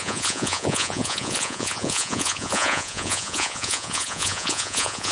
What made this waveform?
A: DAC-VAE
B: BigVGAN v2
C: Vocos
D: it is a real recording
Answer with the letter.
C